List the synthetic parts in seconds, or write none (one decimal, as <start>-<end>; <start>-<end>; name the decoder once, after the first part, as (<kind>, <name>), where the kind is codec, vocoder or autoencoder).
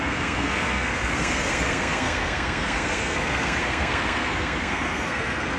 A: 0.0-5.6 (codec, SNAC)